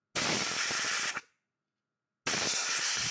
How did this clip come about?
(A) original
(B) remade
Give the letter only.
A